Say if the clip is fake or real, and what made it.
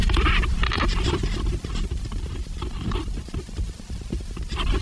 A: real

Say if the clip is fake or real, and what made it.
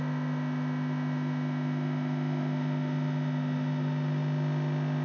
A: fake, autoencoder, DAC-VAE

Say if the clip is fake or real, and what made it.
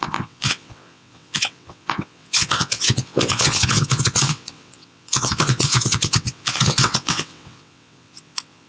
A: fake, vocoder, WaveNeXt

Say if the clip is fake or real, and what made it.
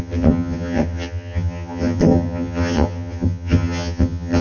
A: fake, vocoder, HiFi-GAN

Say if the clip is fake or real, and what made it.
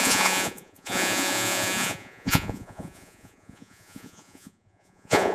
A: fake, vocoder, Vocos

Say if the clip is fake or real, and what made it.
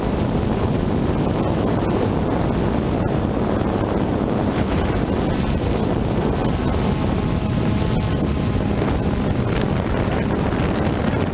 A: real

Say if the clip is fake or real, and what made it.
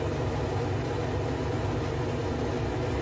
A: real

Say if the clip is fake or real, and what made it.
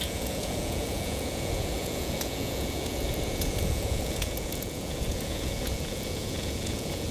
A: fake, vocoder, Vocos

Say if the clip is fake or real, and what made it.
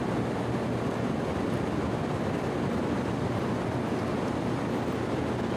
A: real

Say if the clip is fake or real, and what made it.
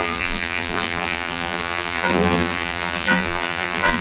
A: fake, vocoder, BigVGAN v2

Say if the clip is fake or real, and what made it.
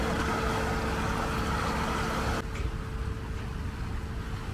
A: real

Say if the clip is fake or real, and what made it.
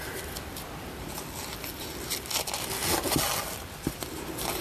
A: real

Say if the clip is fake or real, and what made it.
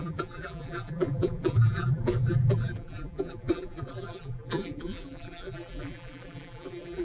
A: fake, vocoder, BigVGAN v2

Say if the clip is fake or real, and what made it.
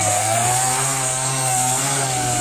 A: fake, codec, SNAC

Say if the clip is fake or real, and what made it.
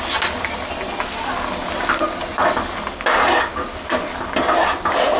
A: real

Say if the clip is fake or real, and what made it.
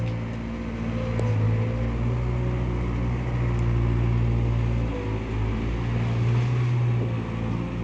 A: real